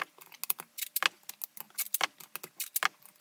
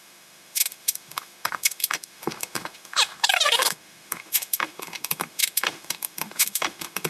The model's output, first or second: second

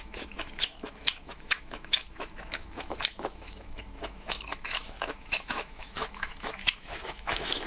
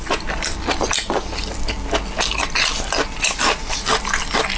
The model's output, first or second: first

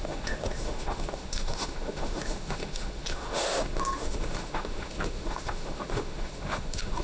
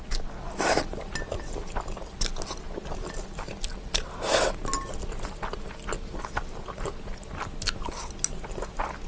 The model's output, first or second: first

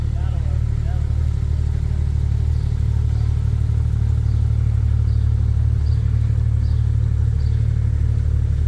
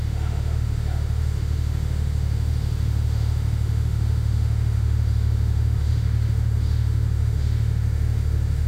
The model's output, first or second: second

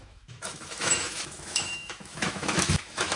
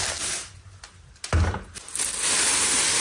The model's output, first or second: first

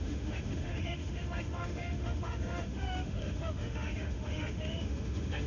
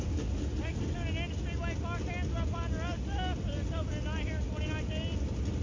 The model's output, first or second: first